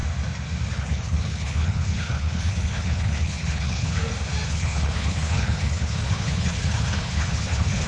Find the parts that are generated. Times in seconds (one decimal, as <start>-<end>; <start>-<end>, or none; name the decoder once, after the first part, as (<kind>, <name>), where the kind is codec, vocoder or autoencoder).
0.7-4.0 (codec, HILCodec); 4.5-7.9